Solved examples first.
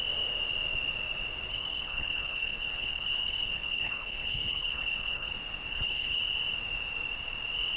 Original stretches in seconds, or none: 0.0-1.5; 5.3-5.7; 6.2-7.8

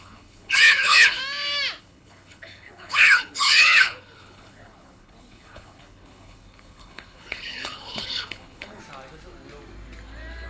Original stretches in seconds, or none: 1.2-1.8; 8.8-10.5